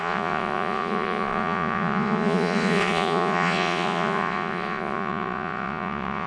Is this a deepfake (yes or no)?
yes